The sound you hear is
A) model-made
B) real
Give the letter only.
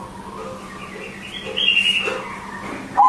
B